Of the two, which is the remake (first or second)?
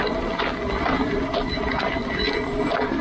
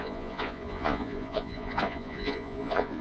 second